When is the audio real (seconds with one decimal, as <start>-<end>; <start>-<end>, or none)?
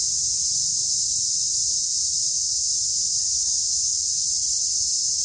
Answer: 0.0-3.9; 4.7-5.2